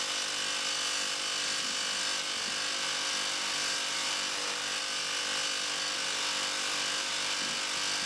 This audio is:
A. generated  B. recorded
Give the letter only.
B